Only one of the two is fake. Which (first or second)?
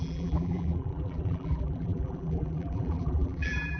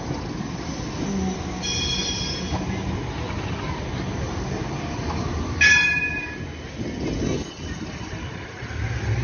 first